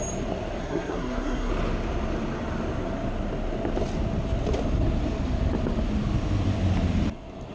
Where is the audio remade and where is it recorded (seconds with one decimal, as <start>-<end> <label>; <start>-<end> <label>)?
0.0-0.6 recorded; 0.6-1.5 remade; 1.5-7.5 recorded